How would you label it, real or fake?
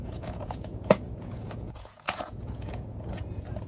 fake